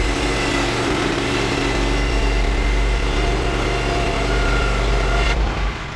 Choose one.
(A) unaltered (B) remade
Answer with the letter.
A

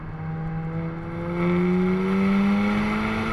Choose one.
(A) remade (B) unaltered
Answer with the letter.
B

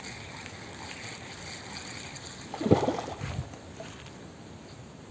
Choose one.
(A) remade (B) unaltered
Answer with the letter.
B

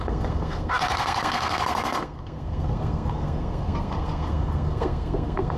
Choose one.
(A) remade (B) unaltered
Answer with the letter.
A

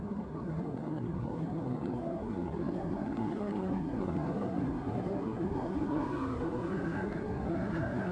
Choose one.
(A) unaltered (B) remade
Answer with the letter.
B